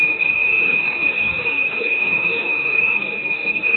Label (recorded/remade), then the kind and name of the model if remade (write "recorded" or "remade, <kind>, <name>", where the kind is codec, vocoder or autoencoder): remade, codec, DAC